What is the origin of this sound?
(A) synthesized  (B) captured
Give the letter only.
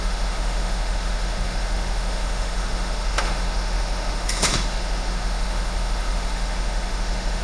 A